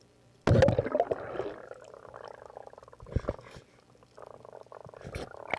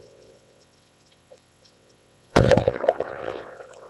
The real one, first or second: first